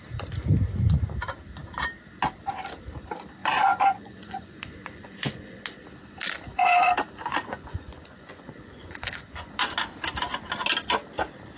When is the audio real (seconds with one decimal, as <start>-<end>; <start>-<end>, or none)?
0.0-3.4; 5.6-7.3; 9.7-11.6